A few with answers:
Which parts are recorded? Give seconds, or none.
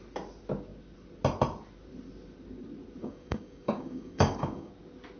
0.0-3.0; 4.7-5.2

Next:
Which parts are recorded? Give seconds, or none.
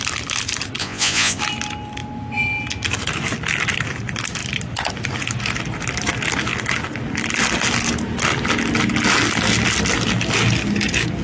0.0-0.8; 1.4-11.2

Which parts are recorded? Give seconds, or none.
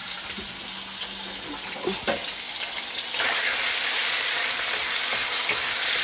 0.7-4.0; 4.8-6.0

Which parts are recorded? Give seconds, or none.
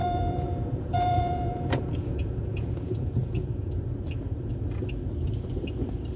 3.7-6.2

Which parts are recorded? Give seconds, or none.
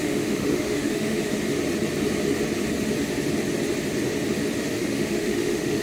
1.4-4.7